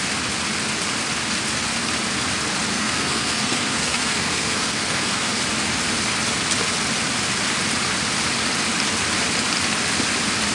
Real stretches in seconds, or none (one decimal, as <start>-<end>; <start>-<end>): 0.0-2.7; 5.4-10.5